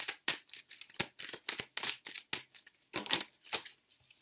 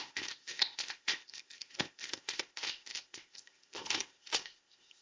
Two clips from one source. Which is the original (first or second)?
first